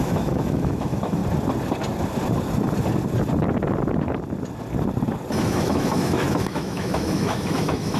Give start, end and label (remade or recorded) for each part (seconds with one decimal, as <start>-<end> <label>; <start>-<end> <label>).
0.0-1.2 remade; 1.2-5.4 recorded; 5.4-8.0 remade